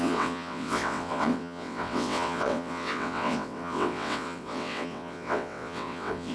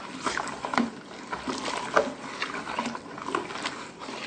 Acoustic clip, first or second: second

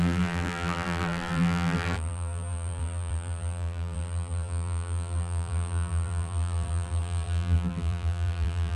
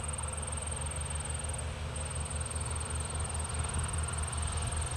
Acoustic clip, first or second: second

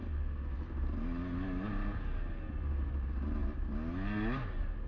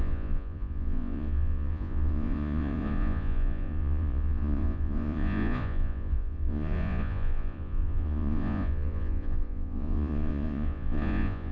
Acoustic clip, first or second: first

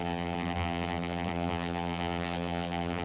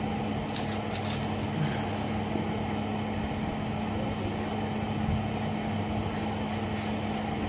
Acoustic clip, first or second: second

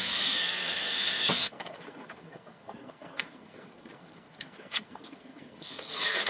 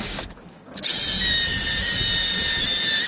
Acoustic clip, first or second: second